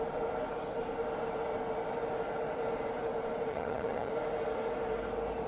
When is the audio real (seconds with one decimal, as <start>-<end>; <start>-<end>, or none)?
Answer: 0.0-3.5; 4.1-5.5